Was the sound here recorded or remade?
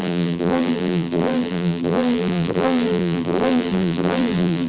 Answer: remade